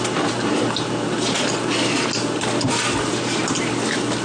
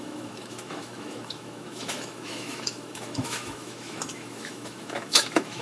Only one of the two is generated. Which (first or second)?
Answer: second